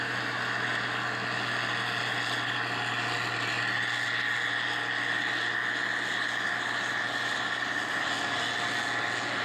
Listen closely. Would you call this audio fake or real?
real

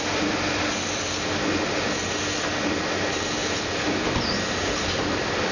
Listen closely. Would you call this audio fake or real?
real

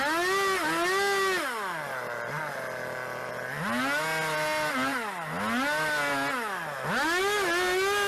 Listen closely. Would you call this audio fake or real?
real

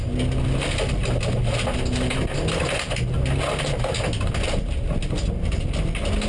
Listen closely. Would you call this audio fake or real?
real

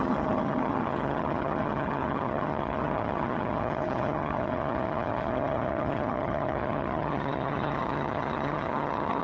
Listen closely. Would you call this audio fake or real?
fake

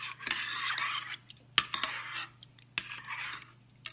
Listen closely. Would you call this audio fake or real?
real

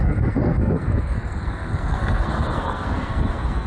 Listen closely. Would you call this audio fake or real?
fake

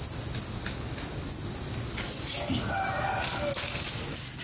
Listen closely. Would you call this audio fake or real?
real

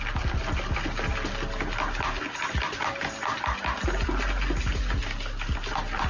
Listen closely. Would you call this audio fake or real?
real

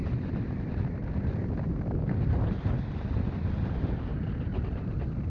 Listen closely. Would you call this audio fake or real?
real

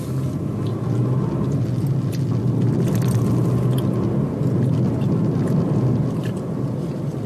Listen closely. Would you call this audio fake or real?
real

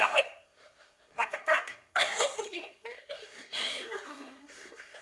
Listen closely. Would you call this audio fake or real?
fake